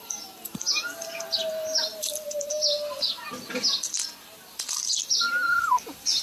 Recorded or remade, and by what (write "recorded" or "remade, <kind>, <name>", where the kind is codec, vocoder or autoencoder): recorded